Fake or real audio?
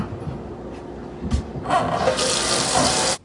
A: real